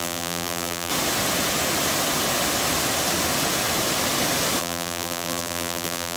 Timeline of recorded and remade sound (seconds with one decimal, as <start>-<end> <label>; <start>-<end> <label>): 0.0-0.9 remade; 0.9-4.6 recorded; 4.6-6.2 remade